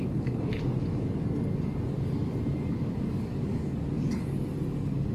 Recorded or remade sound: remade